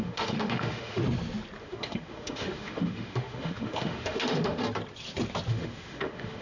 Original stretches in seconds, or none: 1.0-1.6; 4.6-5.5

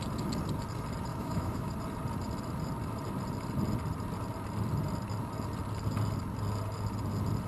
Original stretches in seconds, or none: 0.0-1.1; 1.7-7.5

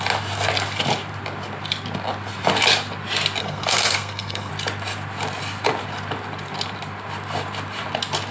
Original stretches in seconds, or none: 0.0-3.4; 4.5-8.3

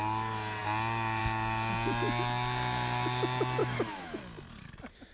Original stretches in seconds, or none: 0.0-3.6; 4.2-5.1

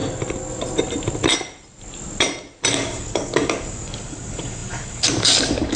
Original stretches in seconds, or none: 0.0-2.7

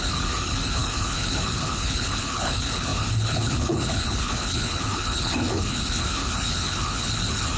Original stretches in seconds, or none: none

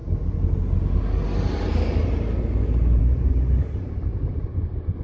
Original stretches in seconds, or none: 0.0-5.0

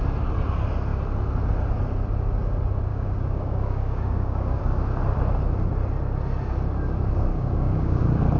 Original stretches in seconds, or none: 0.0-2.9; 4.6-7.3; 8.0-8.4